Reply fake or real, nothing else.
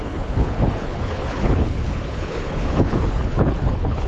fake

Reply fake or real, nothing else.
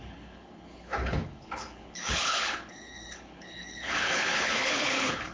fake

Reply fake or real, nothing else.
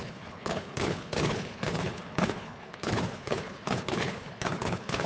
fake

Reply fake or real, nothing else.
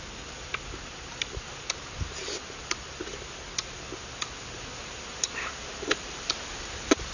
real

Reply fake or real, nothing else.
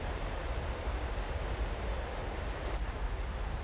real